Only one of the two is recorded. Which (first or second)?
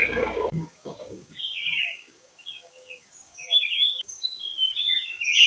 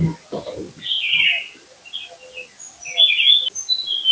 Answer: second